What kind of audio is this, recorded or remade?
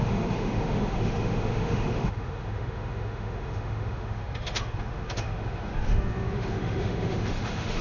remade